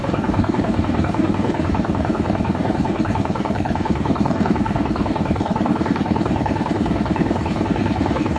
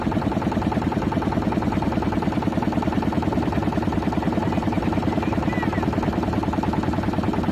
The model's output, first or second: first